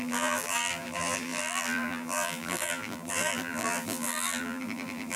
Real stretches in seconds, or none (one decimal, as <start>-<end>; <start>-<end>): none

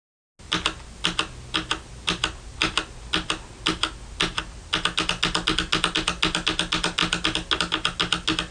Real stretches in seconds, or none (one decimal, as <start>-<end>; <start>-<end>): 0.0-8.5

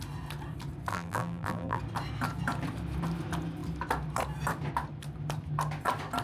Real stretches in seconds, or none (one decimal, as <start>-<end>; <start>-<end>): 0.0-0.9; 1.8-6.2

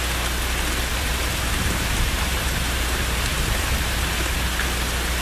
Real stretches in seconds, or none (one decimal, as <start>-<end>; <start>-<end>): 0.0-0.9; 4.0-5.2

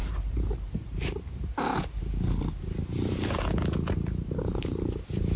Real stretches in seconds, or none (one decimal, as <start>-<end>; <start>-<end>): 2.0-5.4